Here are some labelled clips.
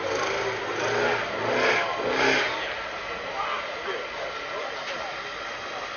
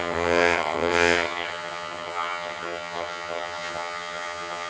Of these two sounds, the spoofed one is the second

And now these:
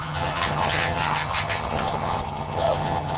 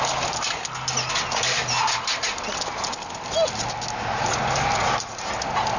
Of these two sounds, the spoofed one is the first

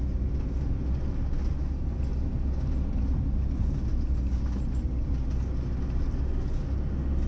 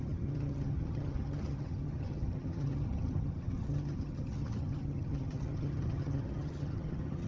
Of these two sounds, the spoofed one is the second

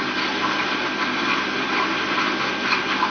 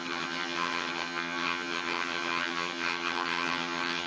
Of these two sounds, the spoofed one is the second